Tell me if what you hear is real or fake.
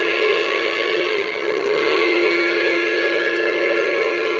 fake